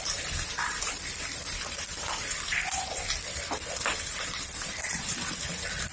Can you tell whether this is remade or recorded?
remade